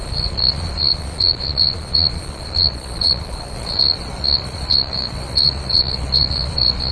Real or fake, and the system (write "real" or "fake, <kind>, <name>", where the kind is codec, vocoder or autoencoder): fake, vocoder, Vocos